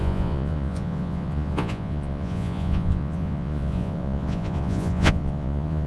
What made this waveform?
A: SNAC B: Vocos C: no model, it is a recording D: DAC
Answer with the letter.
B